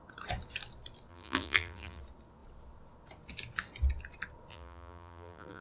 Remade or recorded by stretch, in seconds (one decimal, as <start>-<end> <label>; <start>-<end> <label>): 0.0-1.1 recorded; 1.1-2.0 remade; 2.0-4.5 recorded; 4.5-5.6 remade